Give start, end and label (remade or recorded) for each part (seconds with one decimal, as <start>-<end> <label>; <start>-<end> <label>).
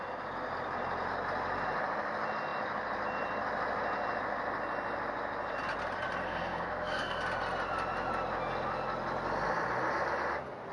0.0-6.2 recorded; 6.2-7.2 remade; 7.2-10.7 recorded